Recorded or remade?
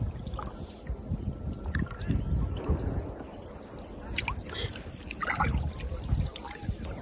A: recorded